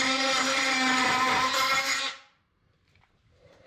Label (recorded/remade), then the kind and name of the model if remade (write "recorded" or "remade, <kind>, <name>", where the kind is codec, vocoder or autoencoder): remade, vocoder, BigVGAN v2